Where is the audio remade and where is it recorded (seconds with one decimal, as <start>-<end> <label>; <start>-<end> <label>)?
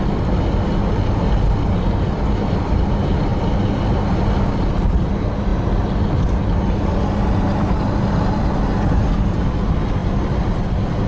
0.0-11.1 recorded